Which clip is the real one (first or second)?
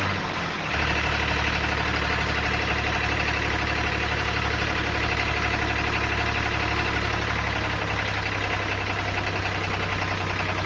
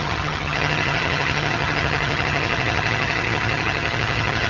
first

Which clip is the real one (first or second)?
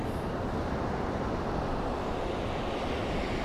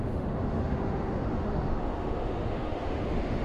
first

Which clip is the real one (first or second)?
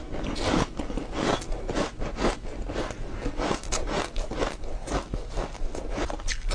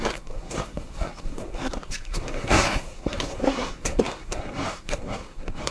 first